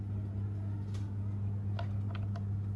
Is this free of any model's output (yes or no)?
yes